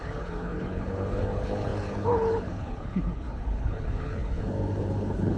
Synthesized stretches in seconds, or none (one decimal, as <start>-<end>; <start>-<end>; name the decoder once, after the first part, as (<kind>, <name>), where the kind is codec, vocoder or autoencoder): 0.0-5.4 (codec, HILCodec)